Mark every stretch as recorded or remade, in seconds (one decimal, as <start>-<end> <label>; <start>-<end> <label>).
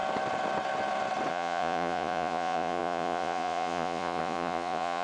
0.0-1.3 recorded; 1.3-5.0 remade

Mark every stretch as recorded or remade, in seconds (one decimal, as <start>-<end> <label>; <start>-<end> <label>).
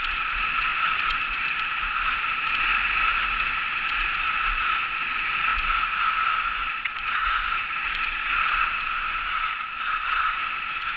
0.0-2.7 remade; 2.7-3.5 recorded; 3.5-5.5 remade; 5.5-6.5 recorded; 6.5-11.0 remade